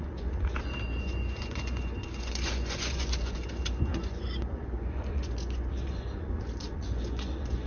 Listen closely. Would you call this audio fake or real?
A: fake